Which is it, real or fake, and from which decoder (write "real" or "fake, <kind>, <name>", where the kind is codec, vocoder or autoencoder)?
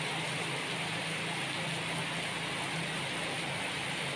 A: real